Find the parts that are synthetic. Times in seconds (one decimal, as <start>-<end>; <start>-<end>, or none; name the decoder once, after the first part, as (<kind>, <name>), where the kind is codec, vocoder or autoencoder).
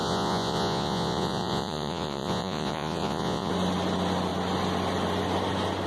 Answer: 0.0-3.5 (vocoder, Vocos)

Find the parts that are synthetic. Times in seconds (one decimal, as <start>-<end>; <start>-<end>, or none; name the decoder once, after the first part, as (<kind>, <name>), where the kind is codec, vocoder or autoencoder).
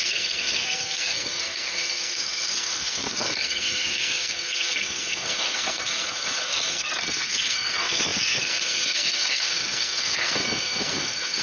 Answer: 0.0-11.4 (codec, SNAC)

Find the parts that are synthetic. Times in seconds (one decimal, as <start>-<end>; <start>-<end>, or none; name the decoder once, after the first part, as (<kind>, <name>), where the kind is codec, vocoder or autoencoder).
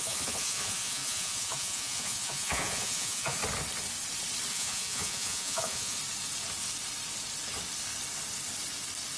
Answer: 0.0-3.4 (vocoder, Vocos); 4.5-6.0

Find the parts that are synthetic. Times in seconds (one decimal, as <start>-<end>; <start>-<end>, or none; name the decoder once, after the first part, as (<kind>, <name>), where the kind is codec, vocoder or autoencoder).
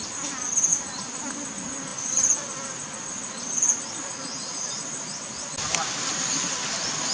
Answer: none